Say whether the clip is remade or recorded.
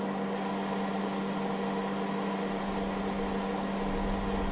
recorded